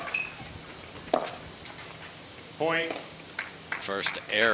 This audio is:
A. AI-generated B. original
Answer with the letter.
B